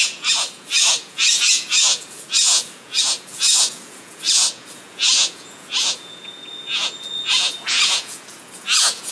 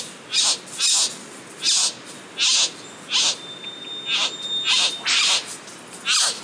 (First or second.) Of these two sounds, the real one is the second